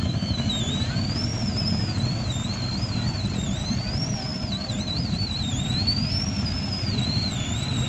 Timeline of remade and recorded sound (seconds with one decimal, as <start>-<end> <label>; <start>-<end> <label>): 0.0-7.9 recorded